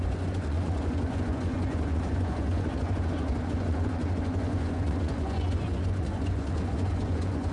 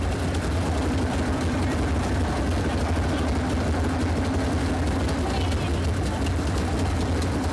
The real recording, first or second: second